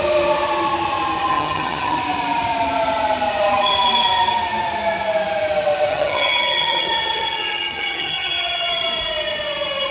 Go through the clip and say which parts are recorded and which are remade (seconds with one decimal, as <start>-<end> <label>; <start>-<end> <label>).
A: 0.0-1.3 recorded; 1.3-2.0 remade; 2.0-5.9 recorded; 5.9-8.7 remade; 8.7-9.9 recorded